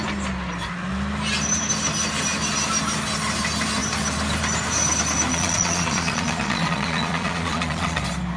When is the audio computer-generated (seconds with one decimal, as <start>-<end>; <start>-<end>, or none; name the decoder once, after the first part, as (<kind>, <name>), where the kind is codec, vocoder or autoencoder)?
5.3-8.0 (vocoder, Vocos)